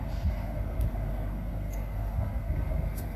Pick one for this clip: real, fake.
fake